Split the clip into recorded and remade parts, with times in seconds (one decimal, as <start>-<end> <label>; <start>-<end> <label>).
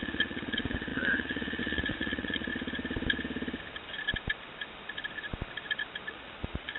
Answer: 0.0-2.5 remade; 2.5-6.1 recorded; 6.1-6.8 remade